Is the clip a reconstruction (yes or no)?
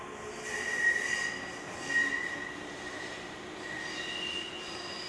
no